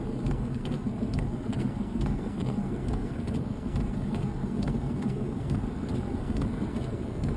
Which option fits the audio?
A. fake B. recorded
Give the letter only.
A